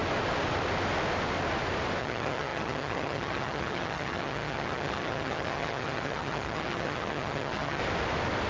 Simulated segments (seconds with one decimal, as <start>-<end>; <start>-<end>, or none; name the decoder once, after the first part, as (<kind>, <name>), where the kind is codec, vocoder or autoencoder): 2.0-7.8 (vocoder, HiFi-GAN)